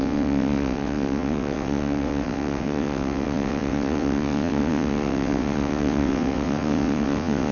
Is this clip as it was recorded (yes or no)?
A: no